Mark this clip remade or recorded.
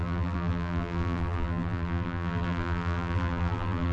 remade